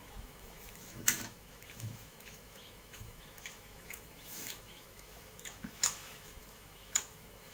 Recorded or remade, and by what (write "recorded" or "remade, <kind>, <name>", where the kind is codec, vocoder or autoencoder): remade, autoencoder, DAC-VAE